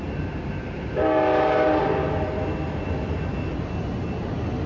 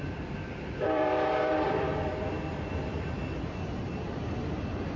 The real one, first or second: first